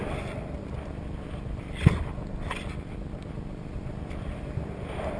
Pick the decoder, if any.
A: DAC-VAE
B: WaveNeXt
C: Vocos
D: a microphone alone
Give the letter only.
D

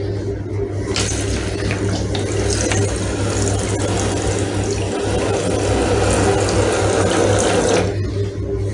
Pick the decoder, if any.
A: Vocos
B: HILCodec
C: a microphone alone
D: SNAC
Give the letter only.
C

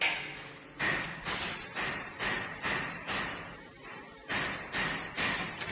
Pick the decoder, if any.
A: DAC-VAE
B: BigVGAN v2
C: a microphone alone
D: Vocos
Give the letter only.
C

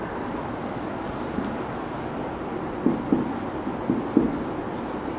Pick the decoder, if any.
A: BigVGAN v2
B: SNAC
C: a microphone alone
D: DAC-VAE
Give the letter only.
A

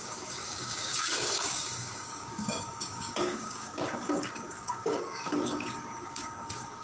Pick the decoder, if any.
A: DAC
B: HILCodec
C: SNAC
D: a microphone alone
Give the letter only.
A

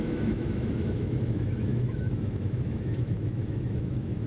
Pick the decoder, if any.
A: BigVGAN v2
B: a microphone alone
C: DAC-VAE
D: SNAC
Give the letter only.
C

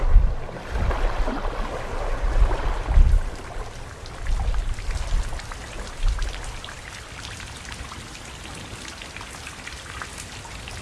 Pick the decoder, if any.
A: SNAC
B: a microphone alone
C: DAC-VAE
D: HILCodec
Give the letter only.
B